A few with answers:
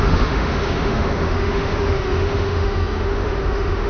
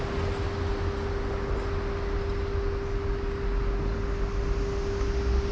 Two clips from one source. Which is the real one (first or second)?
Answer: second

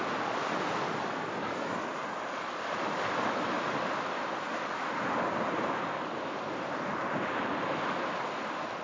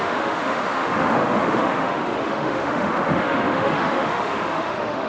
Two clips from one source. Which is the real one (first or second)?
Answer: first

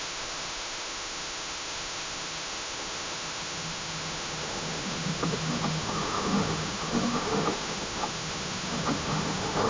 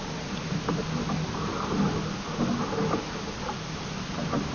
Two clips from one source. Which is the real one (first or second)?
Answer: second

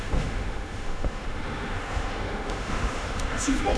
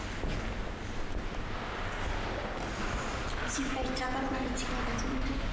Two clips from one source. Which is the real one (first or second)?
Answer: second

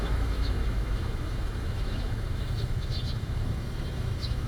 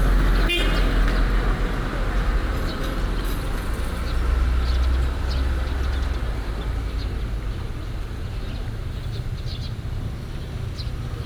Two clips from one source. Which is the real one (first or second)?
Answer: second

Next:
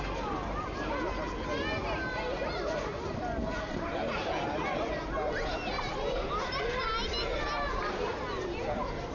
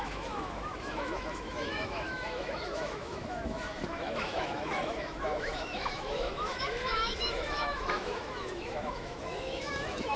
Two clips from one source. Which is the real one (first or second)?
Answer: first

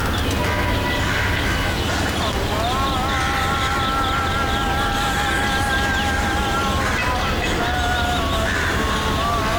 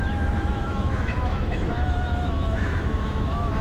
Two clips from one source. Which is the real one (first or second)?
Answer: first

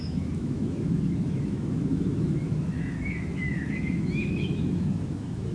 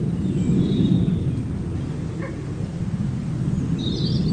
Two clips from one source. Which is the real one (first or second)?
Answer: second